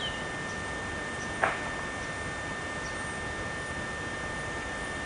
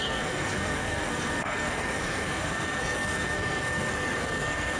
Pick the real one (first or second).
first